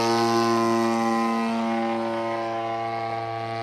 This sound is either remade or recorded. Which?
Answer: recorded